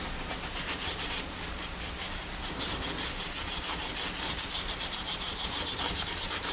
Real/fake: fake